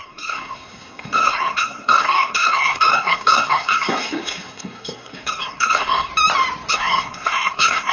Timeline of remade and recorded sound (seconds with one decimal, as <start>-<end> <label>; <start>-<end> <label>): 0.0-6.1 remade; 6.1-6.7 recorded; 6.7-7.9 remade